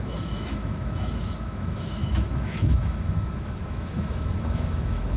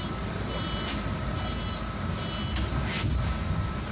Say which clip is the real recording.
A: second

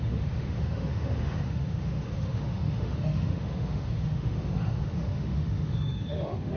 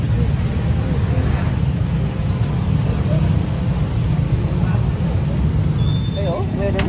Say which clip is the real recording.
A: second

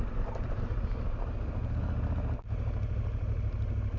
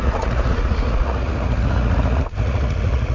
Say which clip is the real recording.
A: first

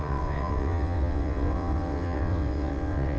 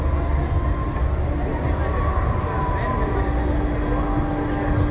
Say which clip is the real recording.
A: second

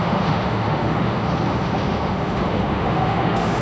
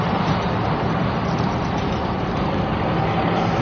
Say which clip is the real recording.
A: second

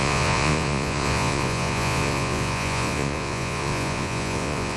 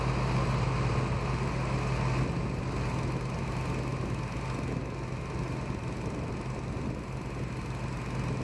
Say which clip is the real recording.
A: second